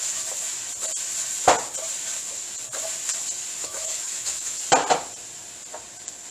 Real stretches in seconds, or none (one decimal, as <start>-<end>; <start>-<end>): 0.0-3.6; 4.6-6.3